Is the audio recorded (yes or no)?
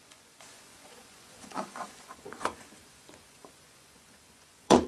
no